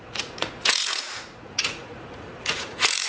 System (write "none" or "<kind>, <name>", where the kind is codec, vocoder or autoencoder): vocoder, Vocos